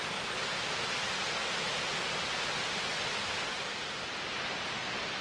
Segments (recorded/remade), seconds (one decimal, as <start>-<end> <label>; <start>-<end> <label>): 0.0-5.2 recorded